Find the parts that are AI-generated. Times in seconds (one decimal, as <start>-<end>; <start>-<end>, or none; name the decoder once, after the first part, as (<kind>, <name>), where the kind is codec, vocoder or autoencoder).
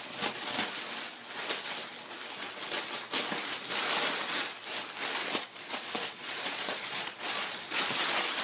5.2-7.8 (vocoder, Vocos)